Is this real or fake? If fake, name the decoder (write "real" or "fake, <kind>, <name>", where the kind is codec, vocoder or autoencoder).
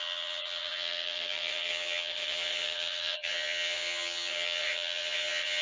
fake, vocoder, HiFi-GAN